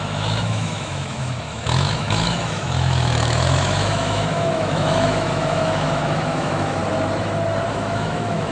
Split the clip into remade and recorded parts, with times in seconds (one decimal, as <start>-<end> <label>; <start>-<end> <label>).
0.0-6.8 remade; 6.8-7.7 recorded; 7.7-8.5 remade